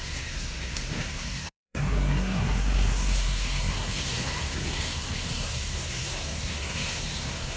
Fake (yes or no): yes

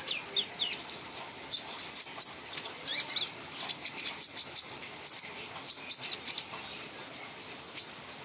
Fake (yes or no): no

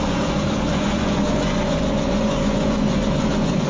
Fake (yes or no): yes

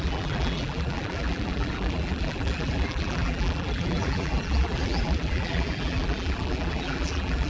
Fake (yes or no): yes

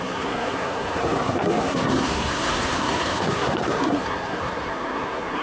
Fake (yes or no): yes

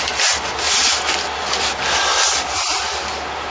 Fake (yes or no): no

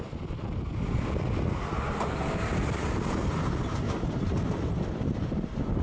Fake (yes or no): no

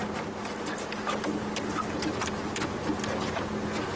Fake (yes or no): no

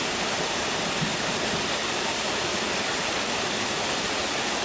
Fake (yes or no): no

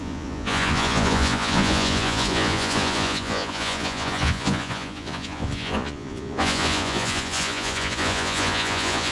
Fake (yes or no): yes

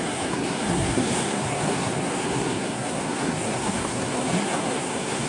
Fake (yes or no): yes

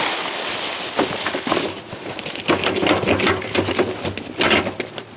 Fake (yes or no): no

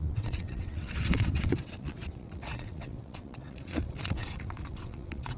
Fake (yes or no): yes